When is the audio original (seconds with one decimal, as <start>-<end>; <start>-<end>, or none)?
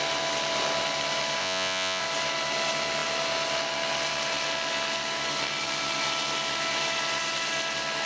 0.0-1.4; 2.0-8.1